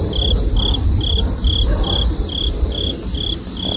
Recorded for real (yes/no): yes